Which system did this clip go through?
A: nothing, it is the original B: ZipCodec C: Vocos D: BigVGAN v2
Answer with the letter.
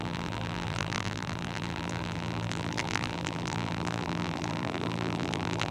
D